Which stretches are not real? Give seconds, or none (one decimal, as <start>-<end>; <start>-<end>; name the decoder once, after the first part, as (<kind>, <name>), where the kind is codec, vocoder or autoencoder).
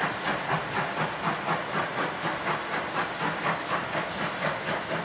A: none